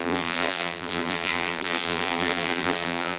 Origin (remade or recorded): remade